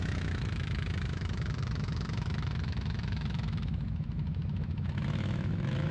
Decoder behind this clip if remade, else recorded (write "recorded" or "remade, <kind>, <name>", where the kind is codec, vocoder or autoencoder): remade, autoencoder, DAC-VAE